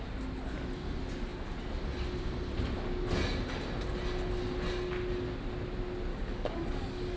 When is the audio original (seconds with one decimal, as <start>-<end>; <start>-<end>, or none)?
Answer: 0.0-6.1